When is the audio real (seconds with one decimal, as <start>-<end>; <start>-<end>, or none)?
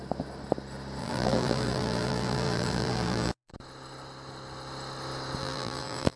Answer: 0.0-1.0; 3.5-5.4